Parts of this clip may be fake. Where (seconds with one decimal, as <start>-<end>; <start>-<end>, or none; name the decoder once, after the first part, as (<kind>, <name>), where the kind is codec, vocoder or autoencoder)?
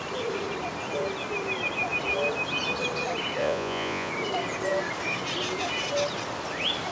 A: 3.4-4.1 (vocoder, Vocos)